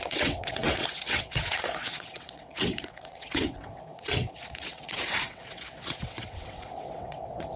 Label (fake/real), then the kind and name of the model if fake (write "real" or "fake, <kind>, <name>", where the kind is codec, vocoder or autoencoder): fake, vocoder, WaveNeXt